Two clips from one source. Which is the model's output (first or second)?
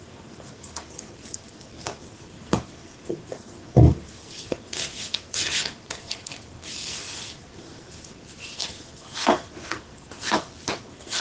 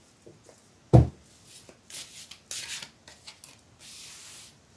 first